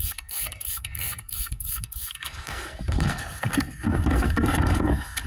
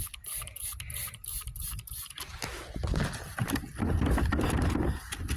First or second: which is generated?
first